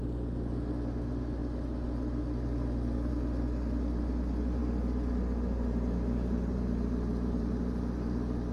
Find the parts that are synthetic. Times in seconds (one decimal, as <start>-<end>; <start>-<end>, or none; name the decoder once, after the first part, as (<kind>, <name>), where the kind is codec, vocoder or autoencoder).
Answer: none